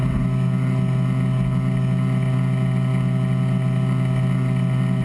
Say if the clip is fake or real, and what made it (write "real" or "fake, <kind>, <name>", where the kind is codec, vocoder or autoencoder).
real